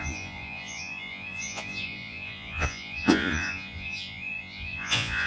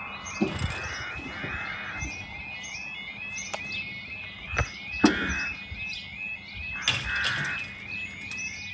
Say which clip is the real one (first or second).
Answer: second